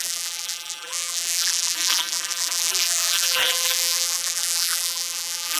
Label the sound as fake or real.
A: fake